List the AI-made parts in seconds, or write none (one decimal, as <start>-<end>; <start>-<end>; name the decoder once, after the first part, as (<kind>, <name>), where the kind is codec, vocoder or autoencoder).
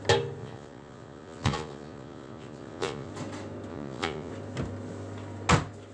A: 0.4-3.1 (vocoder, Vocos); 3.7-4.3